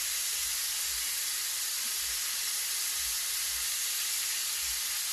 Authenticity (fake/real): real